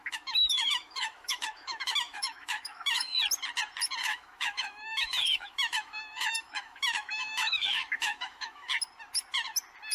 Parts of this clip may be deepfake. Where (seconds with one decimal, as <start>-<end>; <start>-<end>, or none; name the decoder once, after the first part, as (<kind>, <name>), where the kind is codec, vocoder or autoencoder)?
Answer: 0.0-3.2 (autoencoder, DAC-VAE); 4.0-8.7